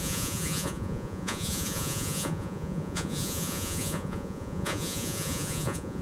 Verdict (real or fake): fake